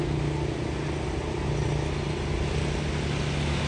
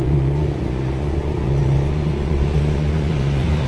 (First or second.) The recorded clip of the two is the first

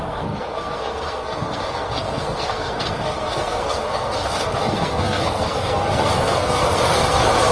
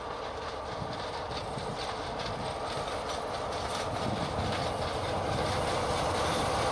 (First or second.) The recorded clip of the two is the second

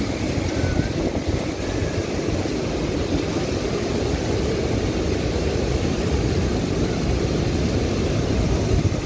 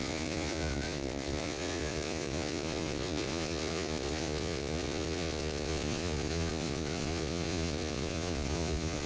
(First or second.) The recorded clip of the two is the first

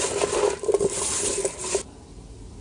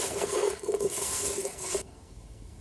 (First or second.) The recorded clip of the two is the first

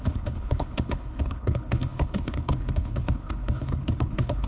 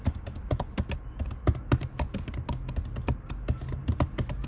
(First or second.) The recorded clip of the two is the second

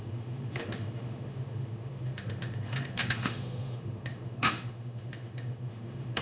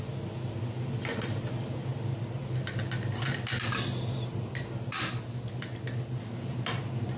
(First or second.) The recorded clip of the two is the second